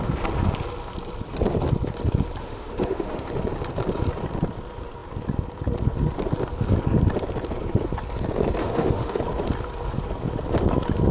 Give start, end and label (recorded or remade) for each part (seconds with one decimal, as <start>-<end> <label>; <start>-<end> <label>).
0.0-2.4 recorded; 2.4-3.3 remade; 3.3-8.6 recorded; 8.6-9.2 remade; 9.2-11.1 recorded

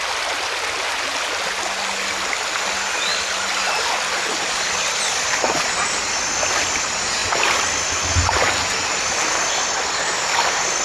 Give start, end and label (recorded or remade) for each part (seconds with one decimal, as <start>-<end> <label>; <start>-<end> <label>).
0.0-10.8 recorded

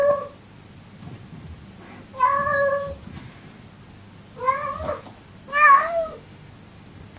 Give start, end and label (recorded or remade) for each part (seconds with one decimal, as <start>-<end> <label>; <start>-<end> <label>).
0.0-5.5 recorded; 5.5-6.5 remade; 6.5-7.2 recorded

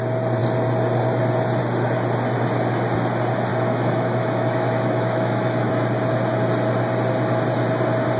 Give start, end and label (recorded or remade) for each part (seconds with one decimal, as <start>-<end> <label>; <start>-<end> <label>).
0.0-3.5 recorded; 3.5-5.7 remade; 5.7-8.2 recorded

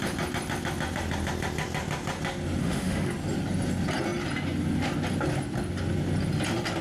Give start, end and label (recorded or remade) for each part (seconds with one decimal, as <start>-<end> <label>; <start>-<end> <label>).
0.0-2.6 recorded; 2.6-3.1 remade; 3.1-6.8 recorded